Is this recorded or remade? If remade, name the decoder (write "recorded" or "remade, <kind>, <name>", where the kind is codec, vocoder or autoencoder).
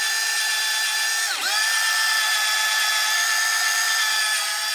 recorded